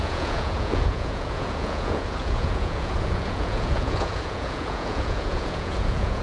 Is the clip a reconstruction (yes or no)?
yes